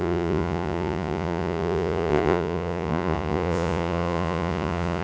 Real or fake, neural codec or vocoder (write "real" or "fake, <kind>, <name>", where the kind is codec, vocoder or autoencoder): fake, vocoder, Vocos